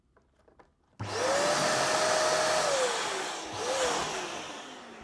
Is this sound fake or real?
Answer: real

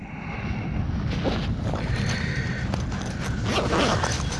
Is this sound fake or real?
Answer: real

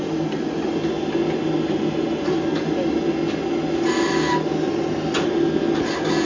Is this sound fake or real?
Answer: real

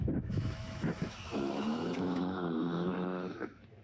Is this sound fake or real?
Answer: fake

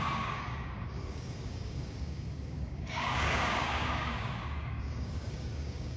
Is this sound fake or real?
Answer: fake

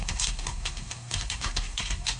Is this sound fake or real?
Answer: fake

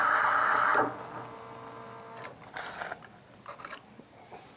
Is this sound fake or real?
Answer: real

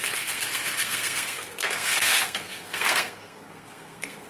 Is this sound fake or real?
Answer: fake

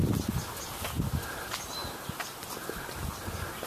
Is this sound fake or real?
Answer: real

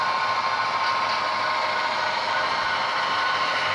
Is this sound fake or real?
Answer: real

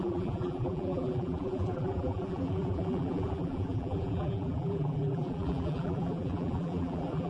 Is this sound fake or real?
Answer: fake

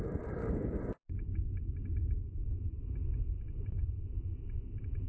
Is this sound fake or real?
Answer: real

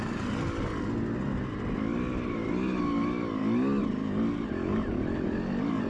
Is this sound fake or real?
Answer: real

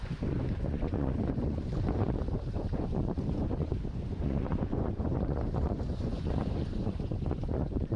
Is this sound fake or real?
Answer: fake